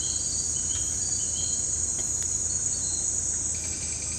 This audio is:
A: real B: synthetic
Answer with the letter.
A